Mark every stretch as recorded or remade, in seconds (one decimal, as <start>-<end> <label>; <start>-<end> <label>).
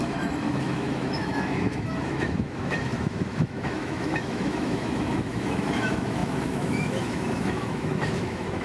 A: 0.0-8.6 remade